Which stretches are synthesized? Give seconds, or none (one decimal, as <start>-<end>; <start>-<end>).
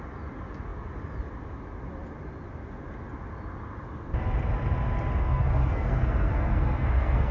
5.2-7.3